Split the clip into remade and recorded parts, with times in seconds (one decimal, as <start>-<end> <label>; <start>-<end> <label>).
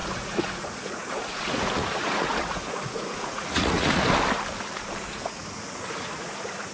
0.0-4.0 remade; 4.0-5.0 recorded; 5.0-6.7 remade